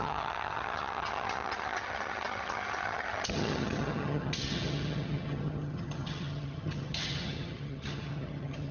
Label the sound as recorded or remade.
remade